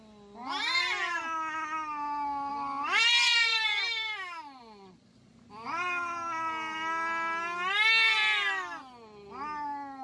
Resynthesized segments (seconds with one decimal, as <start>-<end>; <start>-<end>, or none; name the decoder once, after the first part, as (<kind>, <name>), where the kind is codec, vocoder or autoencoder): none